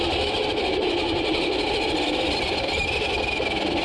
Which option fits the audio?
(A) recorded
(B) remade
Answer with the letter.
A